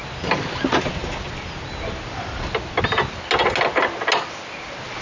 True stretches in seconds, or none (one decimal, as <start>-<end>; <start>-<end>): 0.0-5.0